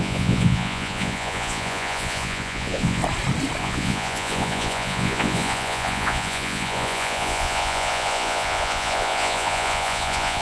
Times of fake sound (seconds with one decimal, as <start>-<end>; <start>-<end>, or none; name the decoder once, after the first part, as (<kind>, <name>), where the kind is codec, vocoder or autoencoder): 0.0-3.0 (vocoder, Vocos); 3.6-10.4